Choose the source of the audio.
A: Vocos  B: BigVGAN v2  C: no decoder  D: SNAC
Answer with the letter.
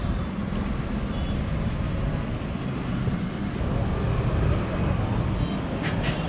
C